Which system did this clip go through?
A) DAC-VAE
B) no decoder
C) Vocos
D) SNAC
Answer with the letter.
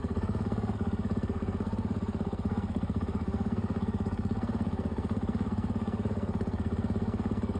D